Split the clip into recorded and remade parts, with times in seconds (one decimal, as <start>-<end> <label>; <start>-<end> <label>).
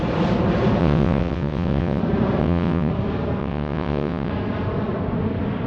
0.0-0.8 recorded; 0.8-2.0 remade; 2.0-2.4 recorded; 2.4-2.9 remade; 2.9-3.4 recorded; 3.4-4.3 remade; 4.3-5.7 recorded